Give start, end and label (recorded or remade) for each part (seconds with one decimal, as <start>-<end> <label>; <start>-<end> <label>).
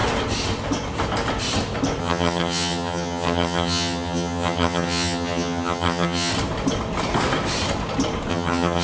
0.0-2.0 recorded; 2.0-6.3 remade; 6.3-8.3 recorded; 8.3-8.8 remade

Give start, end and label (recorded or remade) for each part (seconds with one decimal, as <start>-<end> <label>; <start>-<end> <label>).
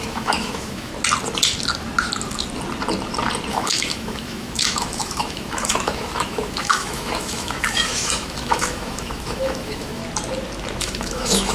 0.0-0.9 remade; 0.9-3.5 recorded; 3.5-10.0 remade; 10.0-10.8 recorded; 10.8-11.5 remade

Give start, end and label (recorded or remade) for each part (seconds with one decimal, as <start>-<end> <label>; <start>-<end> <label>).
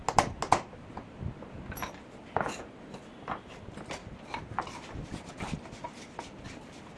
0.0-7.0 recorded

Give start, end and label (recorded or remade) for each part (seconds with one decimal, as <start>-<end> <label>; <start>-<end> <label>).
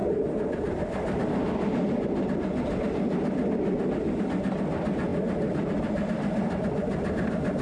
0.0-7.6 recorded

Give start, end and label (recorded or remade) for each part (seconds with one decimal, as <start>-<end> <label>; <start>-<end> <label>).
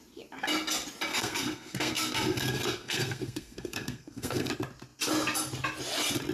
0.0-1.1 recorded; 1.1-4.5 remade; 4.5-6.3 recorded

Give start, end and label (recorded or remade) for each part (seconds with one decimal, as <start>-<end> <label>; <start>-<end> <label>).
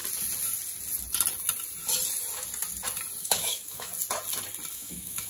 0.0-3.2 recorded; 3.2-3.9 remade; 3.9-4.7 recorded; 4.7-5.3 remade